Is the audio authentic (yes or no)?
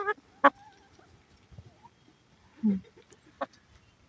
yes